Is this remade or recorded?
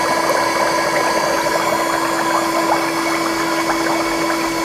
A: recorded